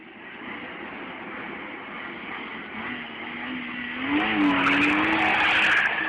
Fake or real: real